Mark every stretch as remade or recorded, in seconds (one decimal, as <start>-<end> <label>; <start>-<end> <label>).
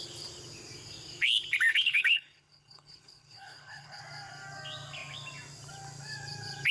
0.0-1.7 recorded; 1.7-4.0 remade; 4.0-6.7 recorded